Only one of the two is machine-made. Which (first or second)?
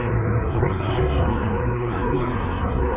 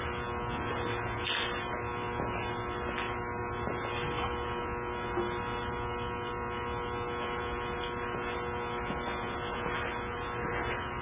first